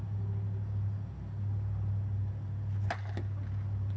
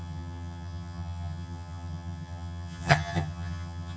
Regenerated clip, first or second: second